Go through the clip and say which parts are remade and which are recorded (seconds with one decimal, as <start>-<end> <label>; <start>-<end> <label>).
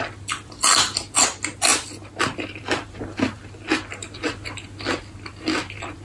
0.0-6.0 recorded